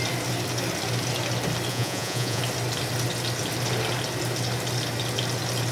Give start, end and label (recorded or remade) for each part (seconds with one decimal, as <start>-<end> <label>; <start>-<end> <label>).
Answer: 0.0-1.7 recorded; 1.7-2.4 remade; 2.4-5.7 recorded

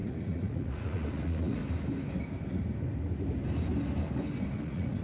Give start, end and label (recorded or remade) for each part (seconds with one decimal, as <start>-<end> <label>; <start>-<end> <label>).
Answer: 0.0-1.6 remade; 1.6-4.5 recorded; 4.5-5.0 remade

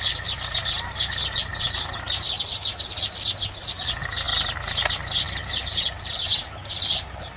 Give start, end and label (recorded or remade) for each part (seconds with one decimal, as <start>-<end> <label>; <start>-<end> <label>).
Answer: 0.0-7.4 recorded

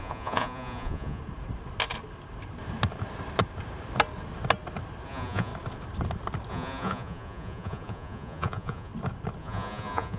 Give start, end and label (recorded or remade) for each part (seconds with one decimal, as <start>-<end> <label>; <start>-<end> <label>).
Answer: 0.0-1.2 remade; 1.2-5.1 recorded; 5.1-5.5 remade; 5.5-6.5 recorded; 6.5-8.9 remade; 8.9-9.4 recorded; 9.4-10.2 remade

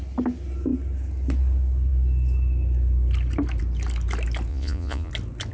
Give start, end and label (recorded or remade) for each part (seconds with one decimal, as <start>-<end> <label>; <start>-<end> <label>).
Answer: 0.0-4.5 recorded; 4.5-5.1 remade; 5.1-5.5 recorded

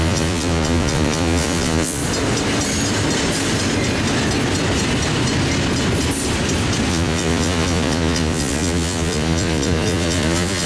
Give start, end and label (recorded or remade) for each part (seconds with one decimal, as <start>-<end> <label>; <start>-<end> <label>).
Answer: 0.0-2.0 remade; 2.0-6.9 recorded; 6.9-10.7 remade